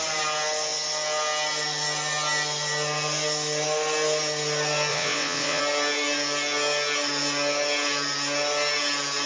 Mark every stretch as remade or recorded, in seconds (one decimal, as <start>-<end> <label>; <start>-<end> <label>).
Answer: 0.0-4.9 recorded; 4.9-5.6 remade; 5.6-9.3 recorded